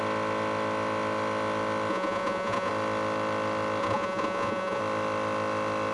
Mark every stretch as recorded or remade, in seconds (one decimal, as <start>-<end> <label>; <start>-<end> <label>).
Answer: 0.0-1.9 recorded; 1.9-2.7 remade; 2.7-3.8 recorded; 3.8-4.8 remade; 4.8-5.9 recorded